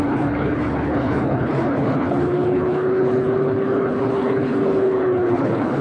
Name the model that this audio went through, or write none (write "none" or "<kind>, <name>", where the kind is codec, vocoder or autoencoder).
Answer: codec, HILCodec